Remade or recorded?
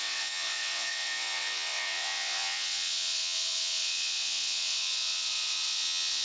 remade